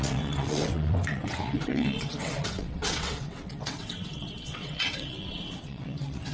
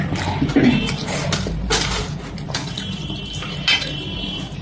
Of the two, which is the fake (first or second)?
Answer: first